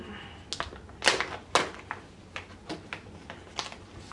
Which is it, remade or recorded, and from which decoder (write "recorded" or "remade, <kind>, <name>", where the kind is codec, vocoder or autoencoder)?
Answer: recorded